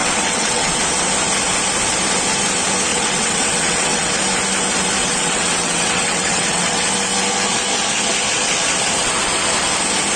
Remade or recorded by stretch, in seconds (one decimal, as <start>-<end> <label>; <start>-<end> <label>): 0.0-0.8 remade; 0.8-2.9 recorded; 2.9-4.1 remade; 4.1-5.0 recorded; 5.0-6.9 remade; 6.9-10.2 recorded